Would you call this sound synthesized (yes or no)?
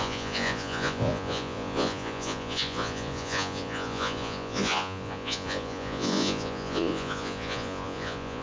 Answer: yes